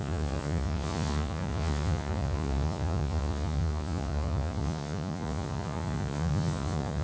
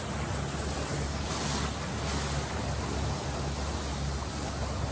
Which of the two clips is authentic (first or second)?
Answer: second